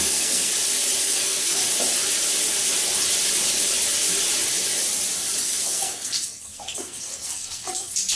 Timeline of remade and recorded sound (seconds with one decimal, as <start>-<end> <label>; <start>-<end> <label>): 0.0-0.5 remade; 0.5-1.0 recorded; 1.0-1.6 remade; 1.6-5.4 recorded; 5.4-8.2 remade